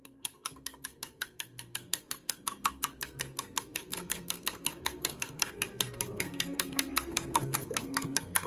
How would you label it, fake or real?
fake